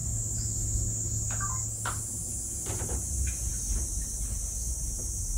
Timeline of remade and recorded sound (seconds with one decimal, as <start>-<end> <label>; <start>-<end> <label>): 0.0-2.7 recorded; 2.7-5.4 remade